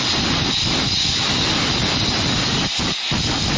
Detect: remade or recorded recorded